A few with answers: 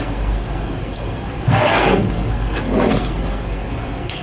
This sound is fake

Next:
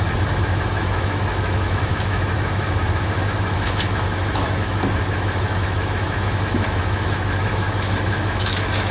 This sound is fake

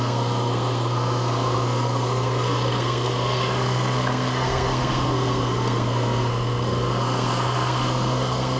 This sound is fake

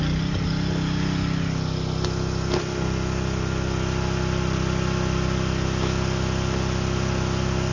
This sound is real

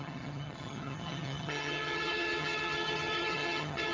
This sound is fake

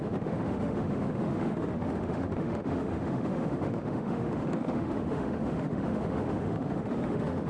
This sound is fake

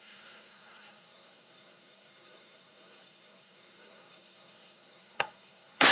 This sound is fake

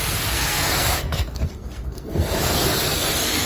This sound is fake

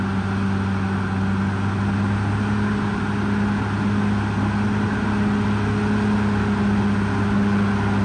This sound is real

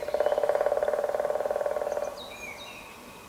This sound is real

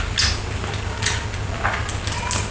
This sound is real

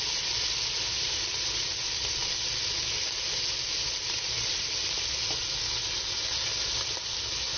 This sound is real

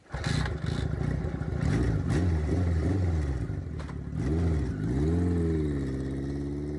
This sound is real